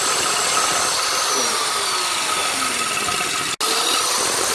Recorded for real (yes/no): yes